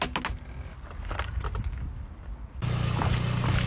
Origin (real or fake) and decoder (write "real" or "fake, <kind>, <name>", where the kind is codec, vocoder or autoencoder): real